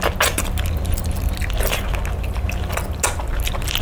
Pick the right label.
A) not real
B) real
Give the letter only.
B